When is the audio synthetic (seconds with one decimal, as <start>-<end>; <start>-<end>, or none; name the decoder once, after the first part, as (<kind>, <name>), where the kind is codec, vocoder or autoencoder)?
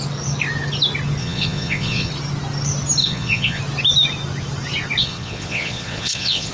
1.2-2.1 (vocoder, Vocos); 3.0-3.6; 5.0-6.5